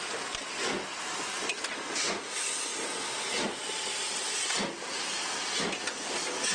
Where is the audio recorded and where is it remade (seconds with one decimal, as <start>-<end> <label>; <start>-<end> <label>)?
0.0-6.5 recorded